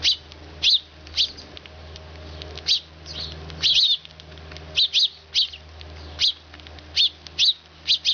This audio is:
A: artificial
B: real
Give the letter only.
B